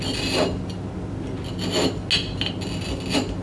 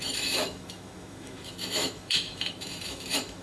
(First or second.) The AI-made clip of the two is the second